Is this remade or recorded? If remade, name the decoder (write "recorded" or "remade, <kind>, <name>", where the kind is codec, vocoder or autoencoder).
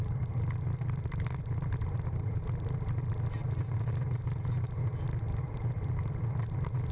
recorded